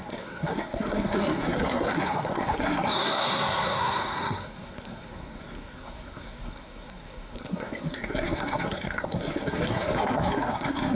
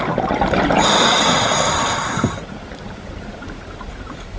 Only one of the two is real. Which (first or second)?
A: second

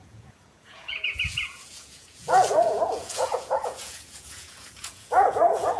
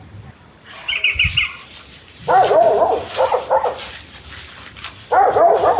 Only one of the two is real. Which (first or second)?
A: second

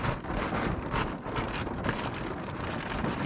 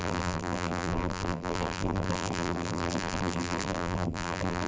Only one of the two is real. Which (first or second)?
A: first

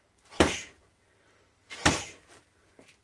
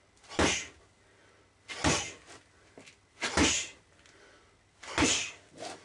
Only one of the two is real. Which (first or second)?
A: second